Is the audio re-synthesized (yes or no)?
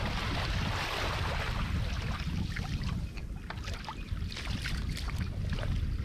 no